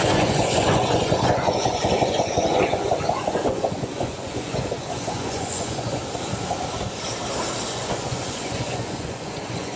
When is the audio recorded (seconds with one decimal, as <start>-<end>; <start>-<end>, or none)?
6.0-7.7